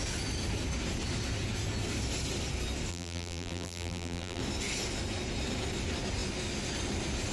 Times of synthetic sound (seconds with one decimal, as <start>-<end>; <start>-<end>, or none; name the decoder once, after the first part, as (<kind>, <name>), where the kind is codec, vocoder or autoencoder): 2.9-4.4 (vocoder, BigVGAN v2)